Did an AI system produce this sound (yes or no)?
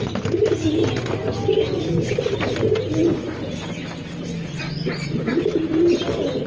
no